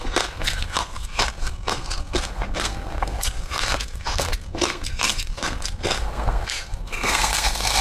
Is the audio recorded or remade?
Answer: remade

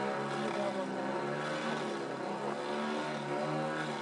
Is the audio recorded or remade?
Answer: recorded